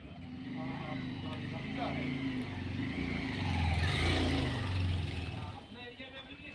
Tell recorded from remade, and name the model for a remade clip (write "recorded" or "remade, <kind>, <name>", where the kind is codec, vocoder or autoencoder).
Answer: recorded